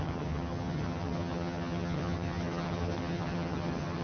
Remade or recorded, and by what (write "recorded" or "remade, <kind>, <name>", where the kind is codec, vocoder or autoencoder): remade, vocoder, HiFi-GAN